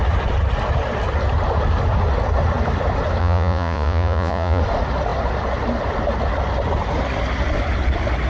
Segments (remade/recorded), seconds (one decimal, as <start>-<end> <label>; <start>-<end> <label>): 0.0-3.2 recorded; 3.2-4.6 remade; 4.6-8.3 recorded